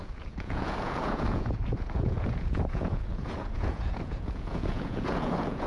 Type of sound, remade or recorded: remade